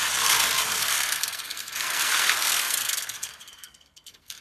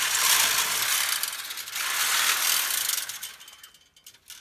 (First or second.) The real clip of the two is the second